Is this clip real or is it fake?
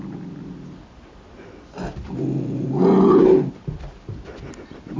real